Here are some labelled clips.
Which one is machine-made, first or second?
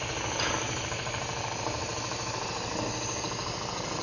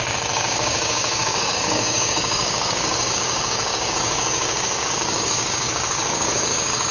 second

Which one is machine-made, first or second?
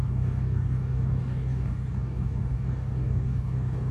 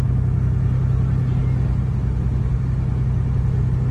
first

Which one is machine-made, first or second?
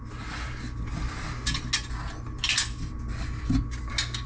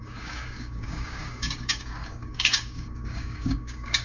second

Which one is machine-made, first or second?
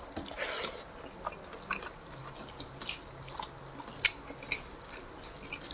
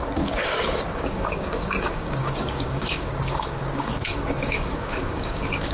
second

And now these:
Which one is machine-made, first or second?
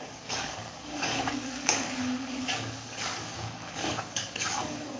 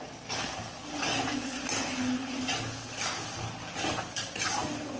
first